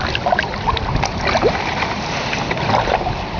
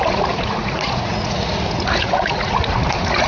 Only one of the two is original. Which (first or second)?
first